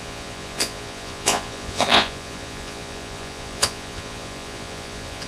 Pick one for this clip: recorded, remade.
remade